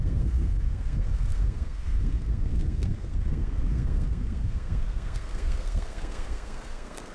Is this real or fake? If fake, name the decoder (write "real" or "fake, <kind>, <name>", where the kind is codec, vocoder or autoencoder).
fake, codec, SNAC